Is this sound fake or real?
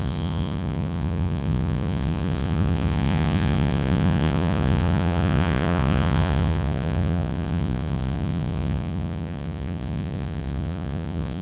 fake